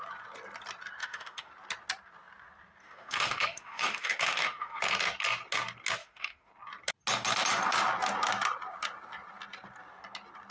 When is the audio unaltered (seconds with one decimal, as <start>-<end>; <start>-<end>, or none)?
0.0-1.0; 1.5-2.8; 4.8-6.0; 6.5-10.5